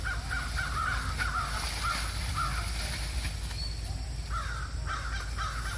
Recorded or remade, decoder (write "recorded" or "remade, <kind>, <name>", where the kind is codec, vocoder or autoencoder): recorded